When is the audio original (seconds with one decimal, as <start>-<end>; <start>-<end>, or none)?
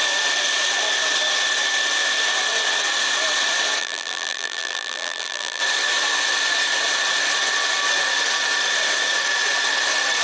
0.0-3.8; 5.6-10.2